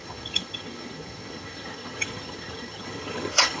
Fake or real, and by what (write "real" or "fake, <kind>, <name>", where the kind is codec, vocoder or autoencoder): fake, vocoder, HiFi-GAN